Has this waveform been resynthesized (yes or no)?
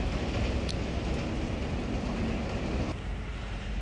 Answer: no